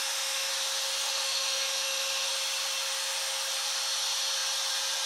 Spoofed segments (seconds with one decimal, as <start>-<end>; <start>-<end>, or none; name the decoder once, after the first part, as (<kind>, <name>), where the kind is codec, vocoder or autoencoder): 0.0-0.5 (autoencoder, DAC-VAE); 1.0-2.3